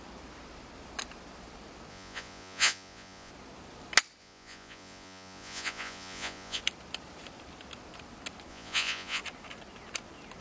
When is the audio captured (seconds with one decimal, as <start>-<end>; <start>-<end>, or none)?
0.0-1.9; 3.3-4.2; 6.6-8.5; 9.2-10.4